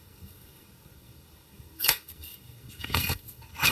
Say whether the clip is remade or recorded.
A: remade